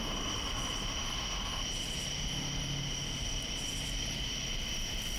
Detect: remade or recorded recorded